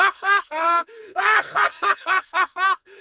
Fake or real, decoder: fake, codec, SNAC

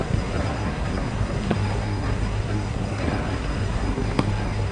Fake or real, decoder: fake, codec, SNAC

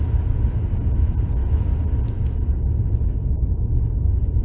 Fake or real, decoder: real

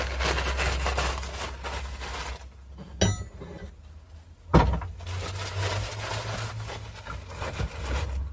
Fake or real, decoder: real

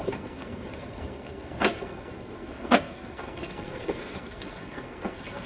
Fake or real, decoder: fake, codec, SNAC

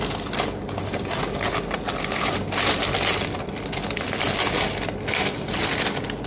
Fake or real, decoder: real